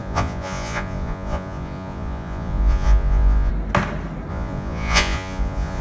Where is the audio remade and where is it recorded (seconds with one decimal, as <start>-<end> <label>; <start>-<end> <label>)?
0.0-3.5 remade; 3.5-4.3 recorded; 4.3-5.8 remade